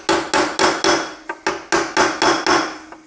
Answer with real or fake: real